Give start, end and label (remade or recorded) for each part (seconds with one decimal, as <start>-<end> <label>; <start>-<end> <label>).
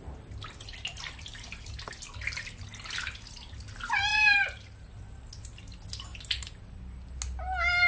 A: 0.0-4.1 recorded; 4.1-5.0 remade; 5.0-6.1 recorded; 6.1-6.7 remade; 6.7-7.9 recorded